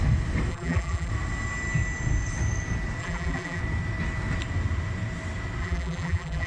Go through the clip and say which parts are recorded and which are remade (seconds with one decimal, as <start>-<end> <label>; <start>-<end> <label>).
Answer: 0.0-0.5 recorded; 0.5-1.1 remade; 1.1-3.0 recorded; 3.0-3.6 remade; 3.6-5.6 recorded; 5.6-6.5 remade

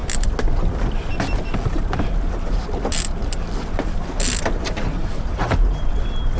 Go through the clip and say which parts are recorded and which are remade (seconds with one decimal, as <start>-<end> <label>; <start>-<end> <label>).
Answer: 0.0-6.4 recorded

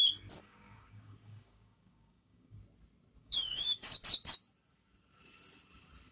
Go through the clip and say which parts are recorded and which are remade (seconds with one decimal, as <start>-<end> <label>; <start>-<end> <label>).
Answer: 0.0-0.4 recorded; 0.4-2.6 remade; 2.6-3.2 recorded; 3.2-4.0 remade; 4.0-6.1 recorded

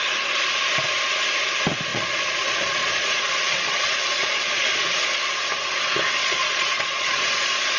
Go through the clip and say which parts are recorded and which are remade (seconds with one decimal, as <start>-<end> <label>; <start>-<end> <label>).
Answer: 0.0-1.9 recorded; 1.9-5.2 remade; 5.2-6.2 recorded; 6.2-7.2 remade; 7.2-7.8 recorded

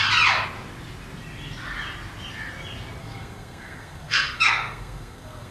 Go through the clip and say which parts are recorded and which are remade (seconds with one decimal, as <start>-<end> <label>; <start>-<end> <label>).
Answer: 0.0-3.0 recorded; 3.0-5.5 remade

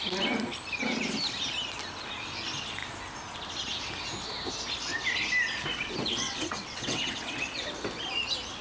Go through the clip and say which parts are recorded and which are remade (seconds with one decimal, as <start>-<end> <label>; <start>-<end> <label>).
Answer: 0.0-5.7 recorded; 5.7-7.7 remade; 7.7-8.6 recorded